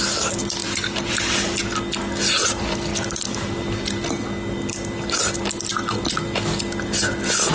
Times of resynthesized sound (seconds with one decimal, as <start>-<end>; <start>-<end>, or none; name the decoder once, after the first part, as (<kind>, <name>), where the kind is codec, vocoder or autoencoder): 0.6-1.1 (vocoder, BigVGAN v2)